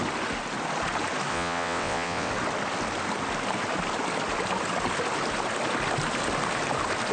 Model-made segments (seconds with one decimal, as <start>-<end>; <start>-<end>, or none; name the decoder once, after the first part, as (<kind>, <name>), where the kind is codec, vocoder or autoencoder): 1.3-2.3 (vocoder, WaveNeXt)